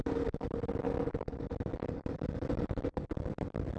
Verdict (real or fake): fake